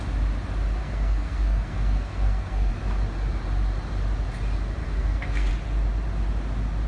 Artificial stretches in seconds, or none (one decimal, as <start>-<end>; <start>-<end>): 0.8-2.7; 4.8-5.5

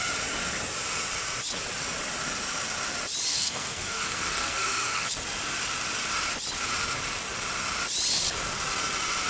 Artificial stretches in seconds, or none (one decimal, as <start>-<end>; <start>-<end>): 3.3-5.1